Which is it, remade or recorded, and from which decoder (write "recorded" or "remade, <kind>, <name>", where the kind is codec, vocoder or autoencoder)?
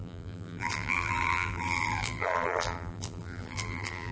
remade, vocoder, BigVGAN v2